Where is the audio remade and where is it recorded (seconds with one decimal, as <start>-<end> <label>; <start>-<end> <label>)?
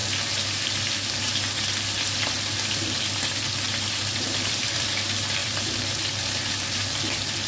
0.0-3.9 recorded; 3.9-7.5 remade